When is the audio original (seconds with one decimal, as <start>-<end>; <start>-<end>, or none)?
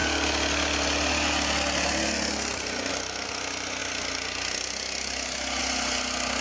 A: 0.0-6.4